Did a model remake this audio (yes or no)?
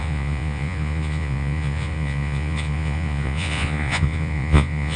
yes